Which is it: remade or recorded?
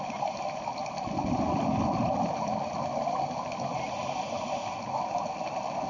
recorded